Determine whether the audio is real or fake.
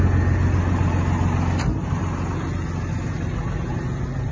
real